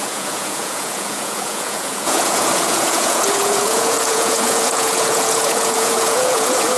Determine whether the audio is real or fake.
fake